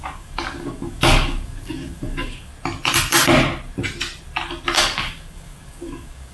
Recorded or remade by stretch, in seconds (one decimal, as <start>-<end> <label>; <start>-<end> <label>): 0.0-2.5 remade; 2.5-4.8 recorded; 4.8-6.3 remade